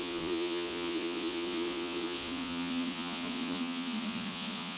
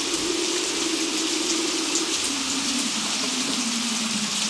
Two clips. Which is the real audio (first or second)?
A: second